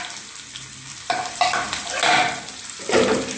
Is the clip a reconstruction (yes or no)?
yes